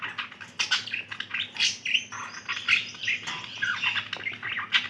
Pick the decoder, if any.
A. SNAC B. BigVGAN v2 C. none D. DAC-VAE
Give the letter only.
C